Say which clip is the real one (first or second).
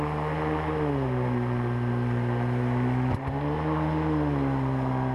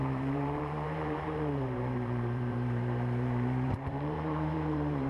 first